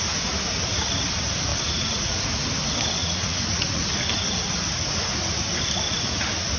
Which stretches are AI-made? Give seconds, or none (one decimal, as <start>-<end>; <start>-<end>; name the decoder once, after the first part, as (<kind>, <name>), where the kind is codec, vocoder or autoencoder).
1.5-2.3 (vocoder, Vocos); 3.0-3.8